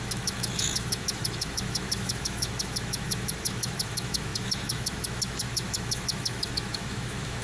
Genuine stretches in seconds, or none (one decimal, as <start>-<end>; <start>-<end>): none